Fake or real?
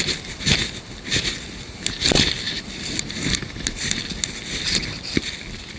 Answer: real